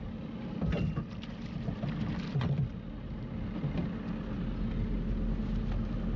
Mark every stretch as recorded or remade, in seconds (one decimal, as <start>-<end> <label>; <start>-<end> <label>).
0.0-6.2 recorded